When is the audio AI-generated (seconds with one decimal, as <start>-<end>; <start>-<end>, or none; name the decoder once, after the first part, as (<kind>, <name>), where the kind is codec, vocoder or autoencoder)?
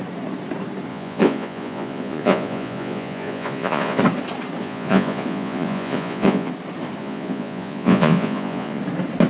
0.9-4.0 (vocoder, Vocos); 4.6-6.5; 7.0-8.8